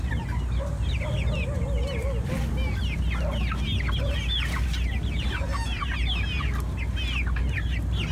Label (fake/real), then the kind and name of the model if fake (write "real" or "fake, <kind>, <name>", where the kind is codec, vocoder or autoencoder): real